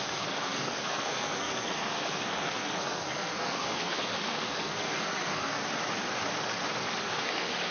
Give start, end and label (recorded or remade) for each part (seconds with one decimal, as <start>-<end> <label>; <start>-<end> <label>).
0.0-5.6 remade; 5.6-7.0 recorded; 7.0-7.7 remade